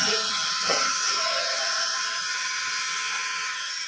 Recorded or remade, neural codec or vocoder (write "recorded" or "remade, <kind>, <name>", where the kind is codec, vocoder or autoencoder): remade, vocoder, HiFi-GAN